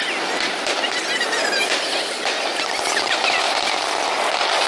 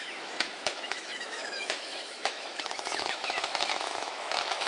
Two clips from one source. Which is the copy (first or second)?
second